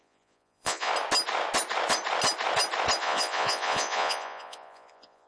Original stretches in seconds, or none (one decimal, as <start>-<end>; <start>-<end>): 0.9-3.0